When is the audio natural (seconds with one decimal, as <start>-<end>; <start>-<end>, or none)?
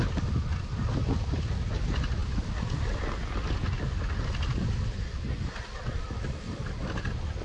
0.0-7.4